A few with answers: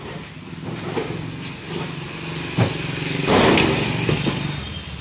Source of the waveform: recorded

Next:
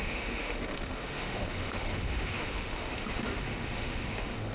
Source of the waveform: remade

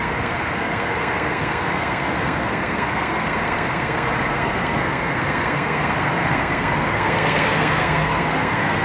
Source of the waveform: remade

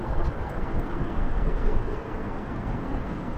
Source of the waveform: remade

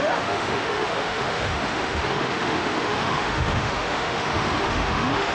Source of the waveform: remade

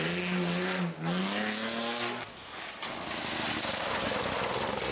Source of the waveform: recorded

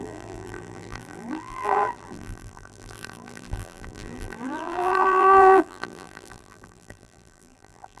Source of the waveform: remade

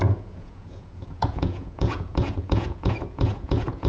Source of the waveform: remade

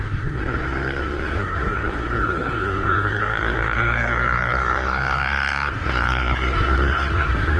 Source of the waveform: remade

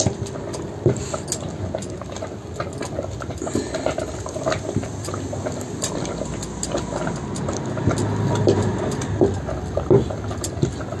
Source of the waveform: recorded